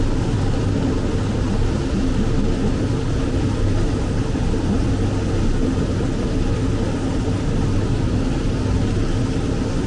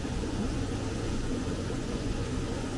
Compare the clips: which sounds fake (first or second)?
second